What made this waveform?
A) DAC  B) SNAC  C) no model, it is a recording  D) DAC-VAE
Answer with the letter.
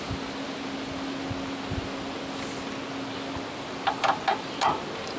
C